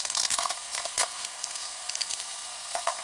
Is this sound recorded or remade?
remade